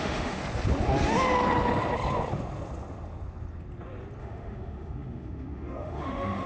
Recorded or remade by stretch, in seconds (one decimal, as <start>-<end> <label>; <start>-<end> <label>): 0.0-0.4 remade; 0.4-4.2 recorded; 4.2-6.5 remade